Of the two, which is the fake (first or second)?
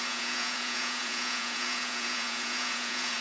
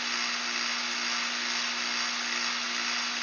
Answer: first